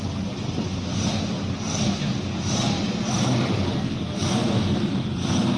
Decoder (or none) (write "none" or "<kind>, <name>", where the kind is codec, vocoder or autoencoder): none